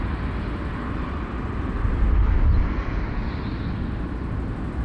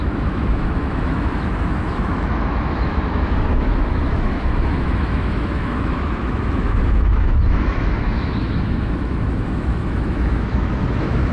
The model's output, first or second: second